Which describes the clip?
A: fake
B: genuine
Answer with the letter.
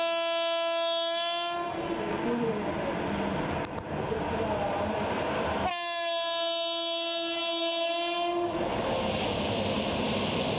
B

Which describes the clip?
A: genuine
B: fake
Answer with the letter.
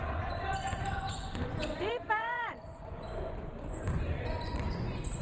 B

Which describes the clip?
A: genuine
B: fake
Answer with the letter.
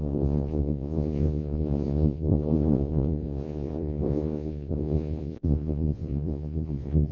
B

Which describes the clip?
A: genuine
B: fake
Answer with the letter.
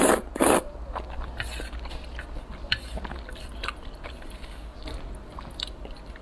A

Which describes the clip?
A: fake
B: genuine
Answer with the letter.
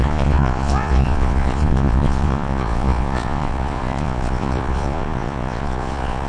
A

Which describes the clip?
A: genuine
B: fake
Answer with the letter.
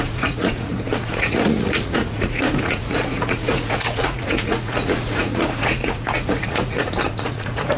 B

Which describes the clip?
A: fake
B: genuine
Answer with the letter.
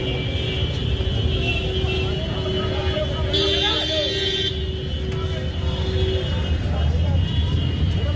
B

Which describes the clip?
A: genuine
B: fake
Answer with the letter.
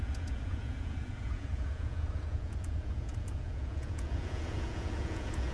B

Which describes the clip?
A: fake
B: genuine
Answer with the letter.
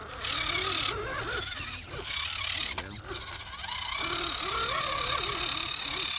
B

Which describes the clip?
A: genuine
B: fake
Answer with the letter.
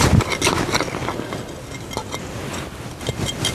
A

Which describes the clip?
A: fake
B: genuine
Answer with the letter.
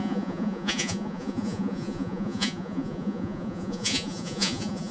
A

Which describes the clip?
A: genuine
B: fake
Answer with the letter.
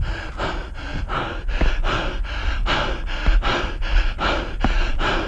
A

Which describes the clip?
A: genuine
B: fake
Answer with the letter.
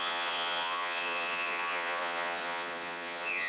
B